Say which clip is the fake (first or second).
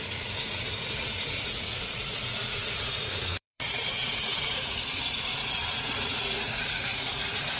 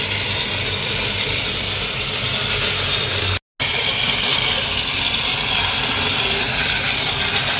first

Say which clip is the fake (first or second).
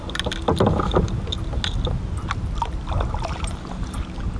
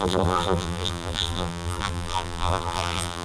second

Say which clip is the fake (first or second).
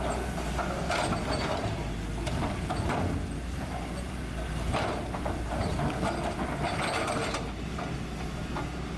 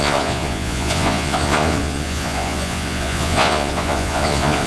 second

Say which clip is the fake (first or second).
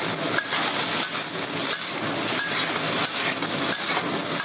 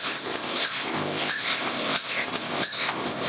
second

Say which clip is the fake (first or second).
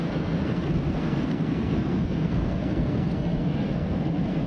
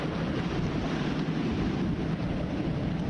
first